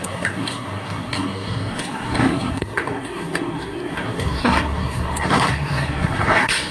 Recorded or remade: remade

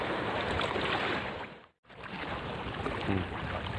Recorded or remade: recorded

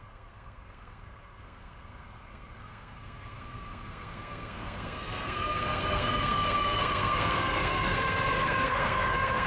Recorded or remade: remade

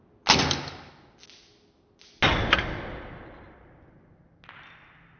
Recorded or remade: recorded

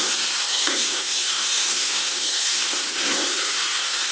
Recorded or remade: remade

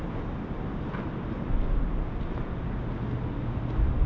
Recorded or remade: recorded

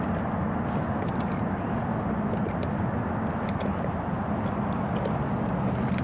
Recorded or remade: recorded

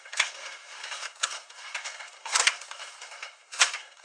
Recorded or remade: remade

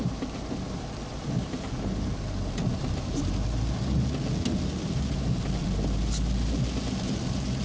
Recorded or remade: recorded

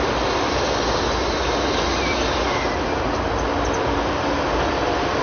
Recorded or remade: recorded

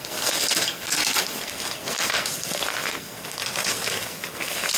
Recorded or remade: remade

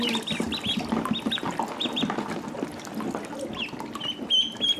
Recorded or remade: recorded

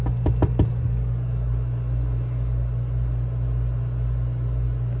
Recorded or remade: recorded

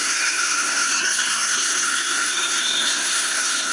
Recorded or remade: remade